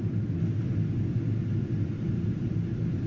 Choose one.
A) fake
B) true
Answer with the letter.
B